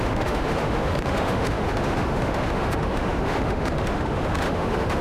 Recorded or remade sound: remade